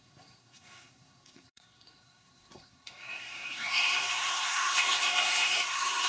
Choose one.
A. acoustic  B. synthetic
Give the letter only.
B